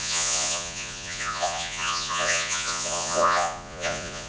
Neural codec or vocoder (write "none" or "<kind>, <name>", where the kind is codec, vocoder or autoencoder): vocoder, Vocos